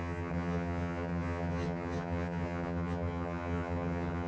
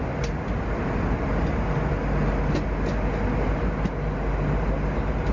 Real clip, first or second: second